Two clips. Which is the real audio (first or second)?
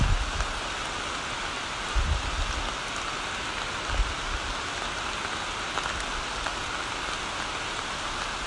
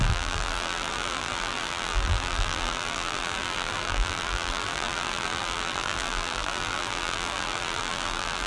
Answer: first